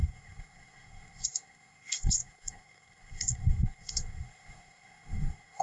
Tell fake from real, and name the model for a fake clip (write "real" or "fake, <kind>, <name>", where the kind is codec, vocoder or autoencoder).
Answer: fake, codec, SNAC